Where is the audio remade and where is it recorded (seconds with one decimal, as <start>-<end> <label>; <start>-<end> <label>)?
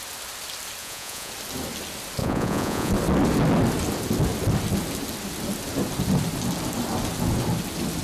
0.0-0.8 recorded; 0.8-1.3 remade; 1.3-2.2 recorded; 2.2-2.9 remade; 2.9-8.0 recorded